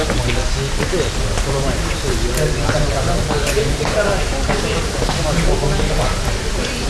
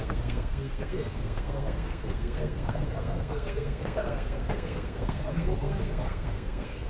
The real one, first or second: first